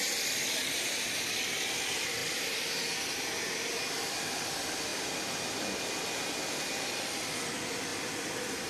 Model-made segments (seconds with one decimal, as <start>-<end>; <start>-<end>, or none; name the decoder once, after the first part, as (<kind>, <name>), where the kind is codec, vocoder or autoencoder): none